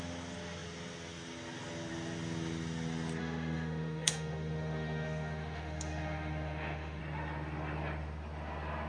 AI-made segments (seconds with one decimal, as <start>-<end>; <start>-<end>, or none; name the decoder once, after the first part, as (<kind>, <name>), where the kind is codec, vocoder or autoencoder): 3.2-7.0 (autoencoder, DAC-VAE)